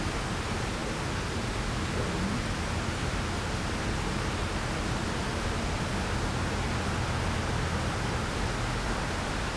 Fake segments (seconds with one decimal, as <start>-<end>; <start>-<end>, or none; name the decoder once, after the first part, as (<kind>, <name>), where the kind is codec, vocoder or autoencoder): none